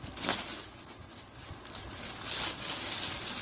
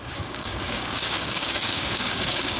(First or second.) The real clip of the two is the first